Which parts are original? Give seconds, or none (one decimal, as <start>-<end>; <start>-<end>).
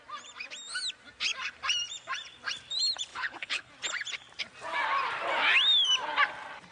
0.0-3.1; 3.7-6.7